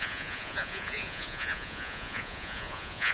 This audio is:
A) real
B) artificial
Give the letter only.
B